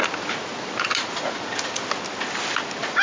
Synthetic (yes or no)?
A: no